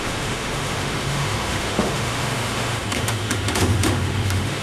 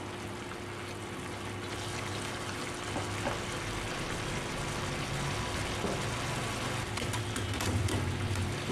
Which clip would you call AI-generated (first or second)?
first